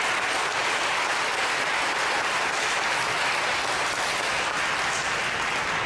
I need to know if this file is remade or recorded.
recorded